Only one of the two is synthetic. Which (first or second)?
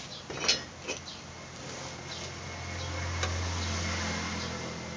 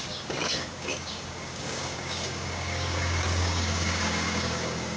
second